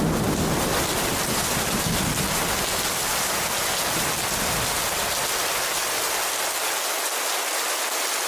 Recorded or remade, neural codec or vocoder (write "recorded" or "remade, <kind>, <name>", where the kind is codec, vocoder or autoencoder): recorded